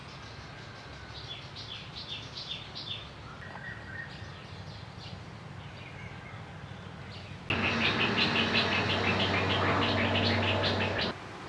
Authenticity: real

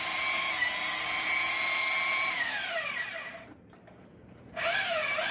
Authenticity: fake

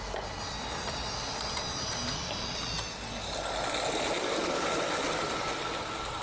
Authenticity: real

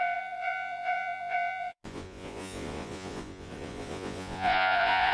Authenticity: fake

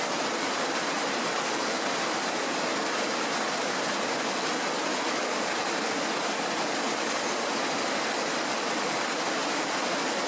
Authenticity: real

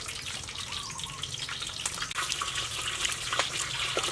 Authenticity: real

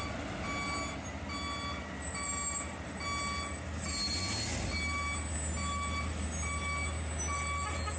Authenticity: real